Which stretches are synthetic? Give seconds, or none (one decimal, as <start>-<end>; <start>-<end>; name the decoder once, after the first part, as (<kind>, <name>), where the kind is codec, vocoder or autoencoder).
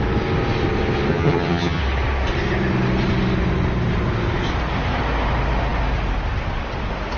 1.1-1.8 (vocoder, HiFi-GAN)